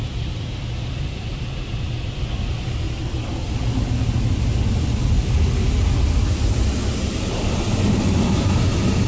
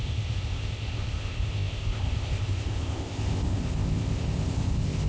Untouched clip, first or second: first